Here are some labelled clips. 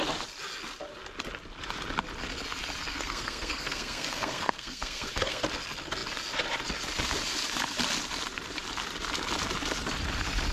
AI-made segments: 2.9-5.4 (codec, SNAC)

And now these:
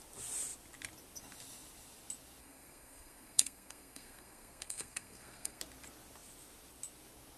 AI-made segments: 2.4-5.6 (codec, SNAC)

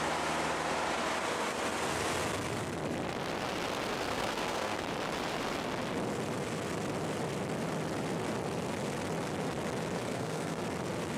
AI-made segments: 4.1-4.8 (codec, SNAC); 10.1-10.6

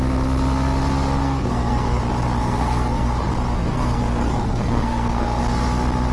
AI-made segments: 1.2-2.0 (codec, SNAC); 2.4-3.3; 3.7-5.4